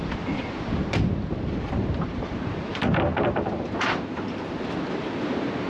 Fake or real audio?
real